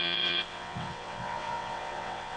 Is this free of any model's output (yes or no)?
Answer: no